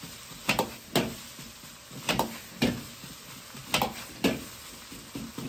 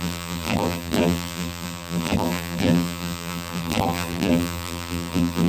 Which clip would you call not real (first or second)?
second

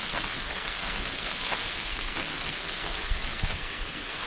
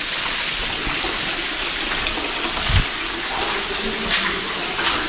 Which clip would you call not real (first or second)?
first